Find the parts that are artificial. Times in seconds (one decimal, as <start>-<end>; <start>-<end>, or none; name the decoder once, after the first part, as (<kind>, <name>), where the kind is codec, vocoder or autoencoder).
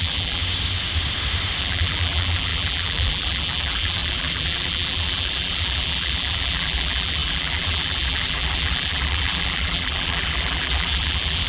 0.0-0.4 (vocoder, BigVGAN v2); 1.6-11.5